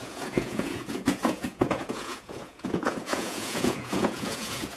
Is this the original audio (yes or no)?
no